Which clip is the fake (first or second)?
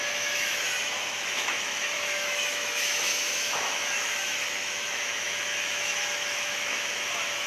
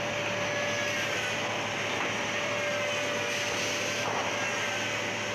first